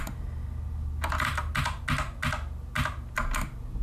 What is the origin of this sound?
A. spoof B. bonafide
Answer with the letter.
B